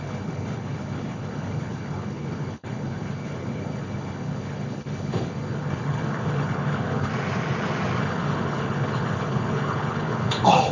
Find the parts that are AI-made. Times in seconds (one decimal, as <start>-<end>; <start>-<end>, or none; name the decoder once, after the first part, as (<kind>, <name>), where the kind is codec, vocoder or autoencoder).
0.0-7.1 (codec, HILCodec); 8.0-10.7